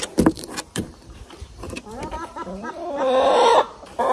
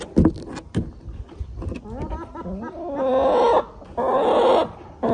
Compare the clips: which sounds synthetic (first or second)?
first